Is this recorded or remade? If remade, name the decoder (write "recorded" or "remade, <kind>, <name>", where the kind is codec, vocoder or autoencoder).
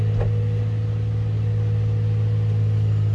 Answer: recorded